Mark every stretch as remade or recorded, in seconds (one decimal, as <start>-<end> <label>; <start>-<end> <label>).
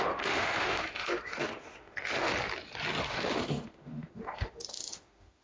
0.0-2.3 remade; 2.3-3.1 recorded; 3.1-5.4 remade